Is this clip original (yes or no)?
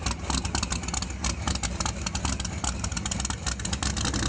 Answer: yes